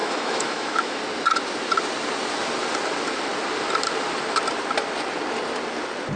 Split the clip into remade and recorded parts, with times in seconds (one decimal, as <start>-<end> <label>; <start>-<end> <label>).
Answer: 0.0-1.0 remade; 1.0-6.2 recorded